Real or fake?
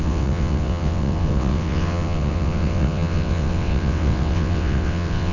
fake